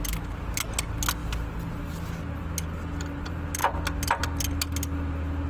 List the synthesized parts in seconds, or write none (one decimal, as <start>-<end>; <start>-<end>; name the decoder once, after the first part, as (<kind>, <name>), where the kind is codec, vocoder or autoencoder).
none